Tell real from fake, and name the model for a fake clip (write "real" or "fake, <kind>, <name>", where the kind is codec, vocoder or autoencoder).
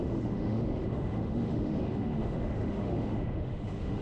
fake, autoencoder, DAC-VAE